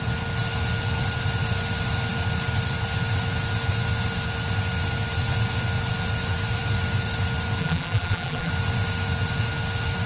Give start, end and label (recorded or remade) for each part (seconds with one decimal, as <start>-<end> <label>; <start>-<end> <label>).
0.0-7.6 recorded; 7.6-8.5 remade; 8.5-10.1 recorded